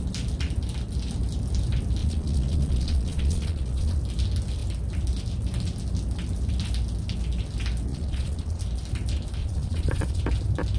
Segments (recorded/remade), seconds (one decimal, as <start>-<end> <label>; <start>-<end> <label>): 0.0-2.0 recorded; 2.0-4.0 remade; 4.0-7.9 recorded; 7.9-8.6 remade; 8.6-9.4 recorded; 9.4-10.2 remade; 10.2-10.8 recorded